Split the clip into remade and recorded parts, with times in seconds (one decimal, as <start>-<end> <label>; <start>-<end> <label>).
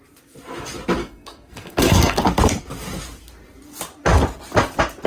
0.0-1.0 recorded; 1.0-2.2 remade; 2.2-5.1 recorded